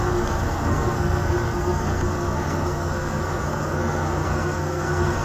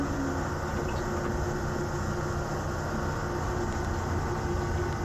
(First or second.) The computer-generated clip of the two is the first